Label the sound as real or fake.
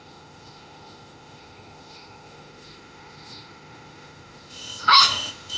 fake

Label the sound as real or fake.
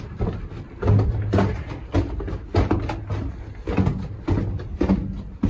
real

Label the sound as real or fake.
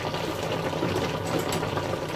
real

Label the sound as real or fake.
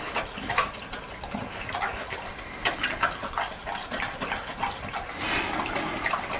real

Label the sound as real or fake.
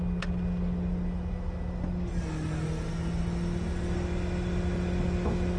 real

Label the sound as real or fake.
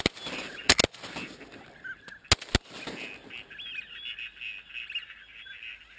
real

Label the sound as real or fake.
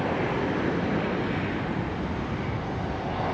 real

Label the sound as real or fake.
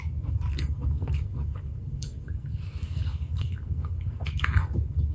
fake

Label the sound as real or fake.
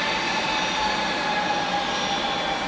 real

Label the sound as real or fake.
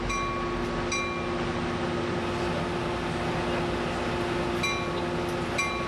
real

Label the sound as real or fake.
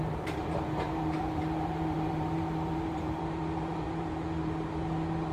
fake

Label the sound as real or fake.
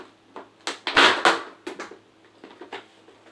real